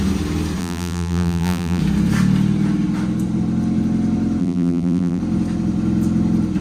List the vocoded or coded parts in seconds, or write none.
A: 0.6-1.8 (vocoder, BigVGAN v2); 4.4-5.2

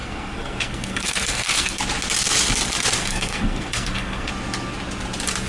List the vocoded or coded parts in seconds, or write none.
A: 0.0-1.8 (codec, SNAC); 3.0-4.3

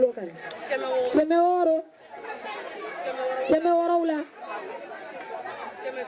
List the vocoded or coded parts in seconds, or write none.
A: 0.0-0.4 (codec, DAC); 1.1-2.0

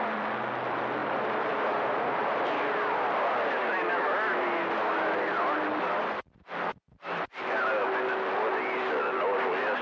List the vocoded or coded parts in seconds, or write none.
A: 1.0-2.4 (vocoder, BigVGAN v2)

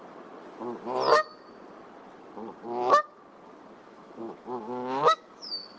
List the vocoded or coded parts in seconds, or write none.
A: 3.8-5.8 (autoencoder, DAC-VAE)